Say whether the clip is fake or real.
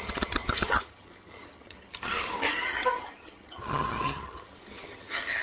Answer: fake